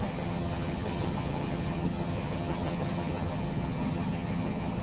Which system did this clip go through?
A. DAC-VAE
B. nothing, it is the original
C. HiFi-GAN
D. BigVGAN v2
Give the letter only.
C